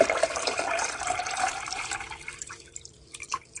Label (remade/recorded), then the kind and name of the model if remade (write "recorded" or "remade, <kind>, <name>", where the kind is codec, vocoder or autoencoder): remade, vocoder, BigVGAN v2